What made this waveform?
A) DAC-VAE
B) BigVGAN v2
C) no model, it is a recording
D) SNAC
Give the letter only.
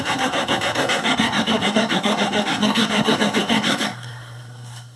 D